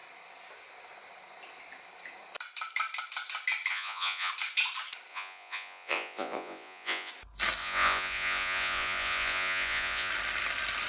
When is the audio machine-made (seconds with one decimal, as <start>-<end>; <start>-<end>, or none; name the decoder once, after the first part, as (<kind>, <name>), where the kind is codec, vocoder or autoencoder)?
3.7-4.3 (vocoder, Vocos); 5.1-7.1; 7.6-10.1